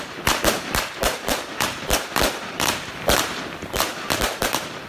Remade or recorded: remade